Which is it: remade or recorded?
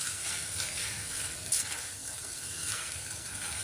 remade